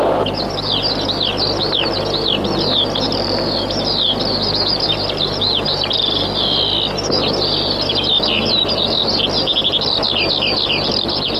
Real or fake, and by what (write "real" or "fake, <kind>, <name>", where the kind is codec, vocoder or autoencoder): real